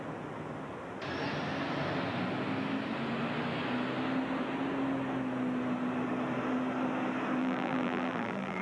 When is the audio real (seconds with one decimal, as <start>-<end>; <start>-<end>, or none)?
0.0-7.4